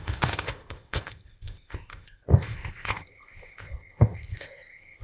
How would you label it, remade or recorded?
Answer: remade